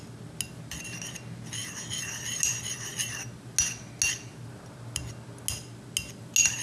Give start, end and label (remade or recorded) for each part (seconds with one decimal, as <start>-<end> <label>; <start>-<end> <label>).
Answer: 0.0-6.6 recorded